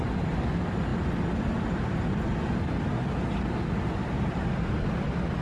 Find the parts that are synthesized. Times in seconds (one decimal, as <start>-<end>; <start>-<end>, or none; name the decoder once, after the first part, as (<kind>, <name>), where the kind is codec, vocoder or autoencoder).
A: none